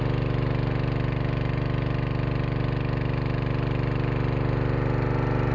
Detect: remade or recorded recorded